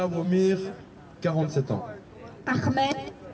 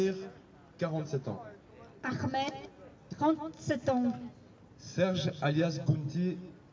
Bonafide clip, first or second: second